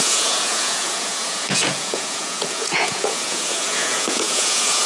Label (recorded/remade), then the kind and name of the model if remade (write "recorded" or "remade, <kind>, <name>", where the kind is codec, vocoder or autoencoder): remade, vocoder, Vocos